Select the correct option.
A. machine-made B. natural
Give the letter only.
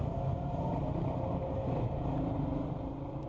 B